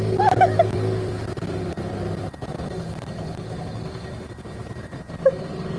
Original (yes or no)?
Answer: yes